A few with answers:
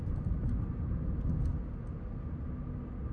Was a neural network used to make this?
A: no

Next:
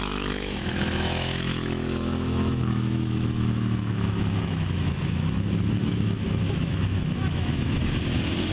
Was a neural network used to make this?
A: yes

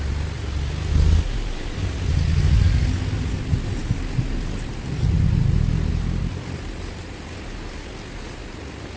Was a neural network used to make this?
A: no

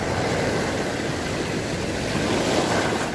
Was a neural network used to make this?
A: no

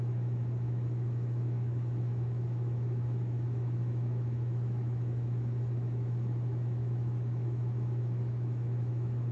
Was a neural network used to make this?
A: yes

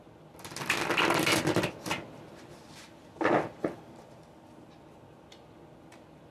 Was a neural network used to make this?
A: no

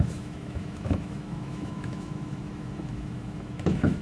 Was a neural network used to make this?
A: yes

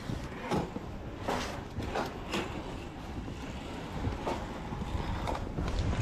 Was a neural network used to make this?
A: no